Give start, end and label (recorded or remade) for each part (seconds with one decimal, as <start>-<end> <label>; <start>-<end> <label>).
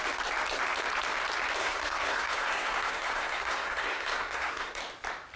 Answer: 0.0-1.6 recorded; 1.6-4.8 remade; 4.8-5.4 recorded